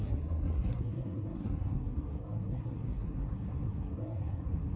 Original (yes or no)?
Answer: no